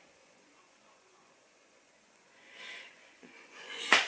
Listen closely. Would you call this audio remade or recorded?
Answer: remade